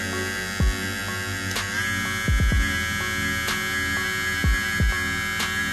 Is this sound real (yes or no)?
yes